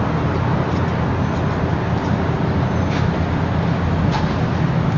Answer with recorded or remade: recorded